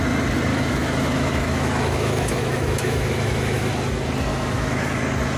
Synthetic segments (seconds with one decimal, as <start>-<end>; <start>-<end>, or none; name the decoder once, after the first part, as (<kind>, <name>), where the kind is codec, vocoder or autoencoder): 0.5-3.7 (autoencoder, DAC-VAE); 4.3-5.0